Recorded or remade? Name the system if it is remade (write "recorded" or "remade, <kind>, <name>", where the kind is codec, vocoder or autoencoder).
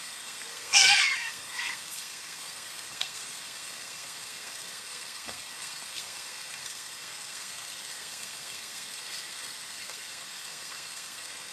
remade, codec, SNAC